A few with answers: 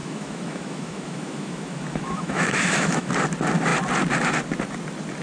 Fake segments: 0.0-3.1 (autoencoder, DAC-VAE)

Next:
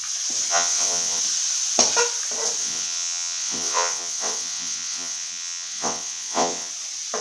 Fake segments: 0.5-1.2 (vocoder, WaveNeXt); 2.6-6.7

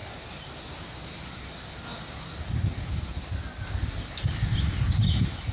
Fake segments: none

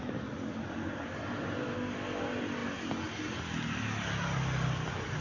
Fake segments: 1.6-2.2 (codec, SNAC)